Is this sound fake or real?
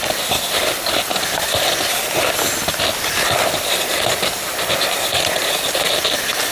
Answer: real